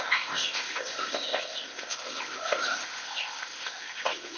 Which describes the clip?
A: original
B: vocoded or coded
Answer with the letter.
B